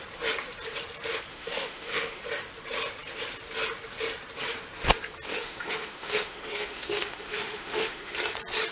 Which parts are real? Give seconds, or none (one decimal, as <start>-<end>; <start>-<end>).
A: 0.0-1.3; 2.2-5.3; 8.1-8.7